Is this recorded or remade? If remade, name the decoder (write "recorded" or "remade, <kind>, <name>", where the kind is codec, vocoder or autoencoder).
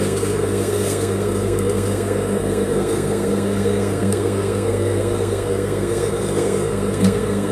remade, codec, SNAC